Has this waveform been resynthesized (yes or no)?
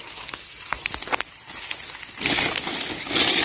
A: no